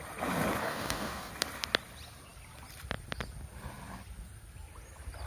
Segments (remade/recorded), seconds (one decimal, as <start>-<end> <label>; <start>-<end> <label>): 0.0-0.6 recorded; 0.6-1.3 remade; 1.3-5.3 recorded